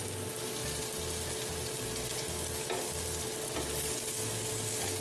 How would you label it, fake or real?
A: real